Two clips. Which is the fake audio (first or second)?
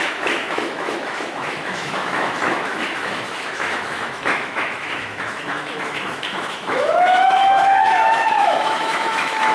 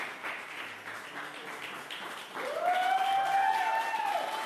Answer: first